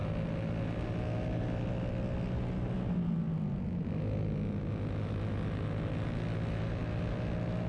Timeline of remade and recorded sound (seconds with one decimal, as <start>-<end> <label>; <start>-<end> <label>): 0.0-7.7 recorded